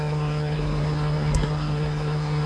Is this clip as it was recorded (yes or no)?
no